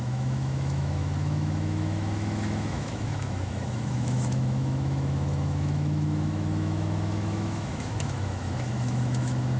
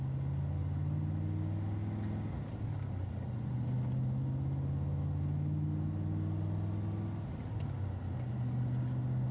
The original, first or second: second